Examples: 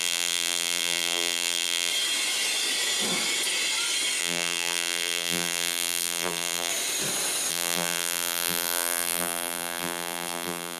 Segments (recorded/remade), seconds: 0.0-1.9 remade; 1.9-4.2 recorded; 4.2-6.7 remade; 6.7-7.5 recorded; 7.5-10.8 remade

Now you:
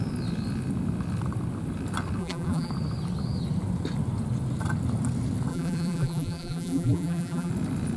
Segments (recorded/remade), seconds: 0.0-2.2 recorded; 2.2-2.7 remade; 2.7-5.5 recorded; 5.5-7.5 remade; 7.5-8.0 recorded

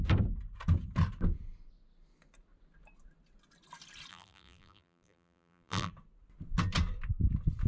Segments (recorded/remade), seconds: 0.0-4.1 recorded; 4.1-5.9 remade; 5.9-7.7 recorded

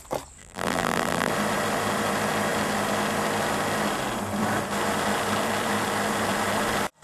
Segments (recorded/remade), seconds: 0.0-0.4 recorded; 0.4-1.3 remade; 1.3-7.0 recorded

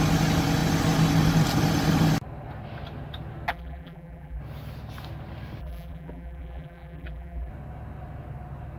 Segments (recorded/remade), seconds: 0.0-3.5 recorded; 3.5-4.4 remade; 4.4-5.6 recorded; 5.6-7.5 remade; 7.5-8.8 recorded